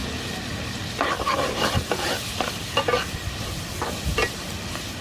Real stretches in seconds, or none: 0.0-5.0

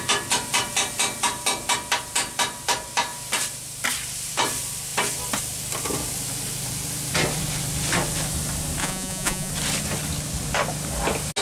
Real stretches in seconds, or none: 0.0-8.8; 9.5-11.4

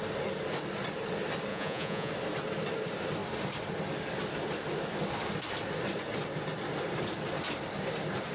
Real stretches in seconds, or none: 0.0-1.5; 2.1-8.3

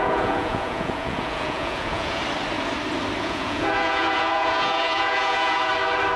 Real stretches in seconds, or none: 2.2-3.2; 5.7-6.2

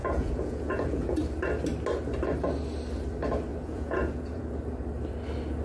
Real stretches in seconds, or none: 1.2-3.5; 4.6-5.6

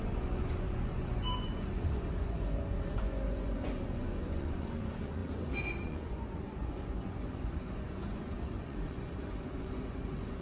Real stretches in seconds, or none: none